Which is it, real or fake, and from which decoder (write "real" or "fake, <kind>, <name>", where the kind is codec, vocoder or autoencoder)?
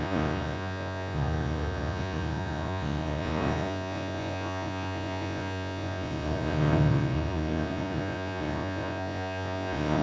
fake, vocoder, Vocos